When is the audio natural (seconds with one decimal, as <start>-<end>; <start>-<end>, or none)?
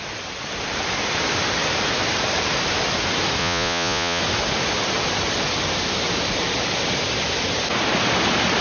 0.0-3.4; 4.2-8.6